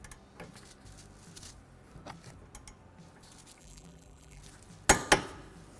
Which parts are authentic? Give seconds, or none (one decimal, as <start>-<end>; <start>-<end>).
0.0-3.6; 4.4-5.8